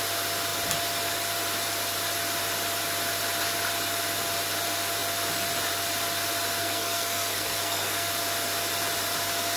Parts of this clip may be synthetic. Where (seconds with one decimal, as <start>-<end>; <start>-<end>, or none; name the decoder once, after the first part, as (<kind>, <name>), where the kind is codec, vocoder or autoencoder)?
6.6-8.1 (codec, SNAC)